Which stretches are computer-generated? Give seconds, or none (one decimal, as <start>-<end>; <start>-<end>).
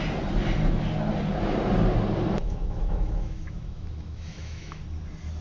2.4-4.8